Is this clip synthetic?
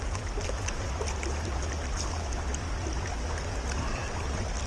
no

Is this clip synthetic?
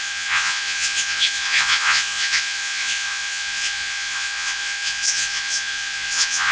yes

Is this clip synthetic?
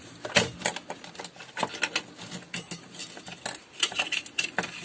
no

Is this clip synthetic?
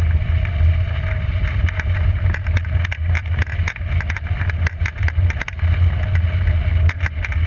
no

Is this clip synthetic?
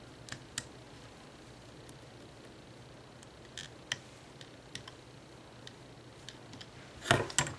no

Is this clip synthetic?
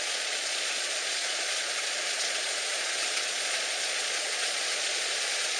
yes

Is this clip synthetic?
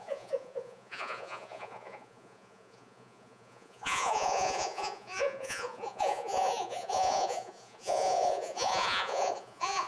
yes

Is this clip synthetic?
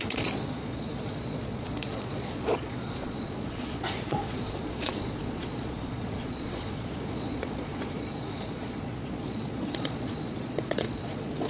yes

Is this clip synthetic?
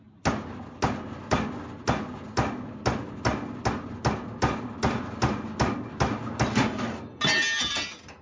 no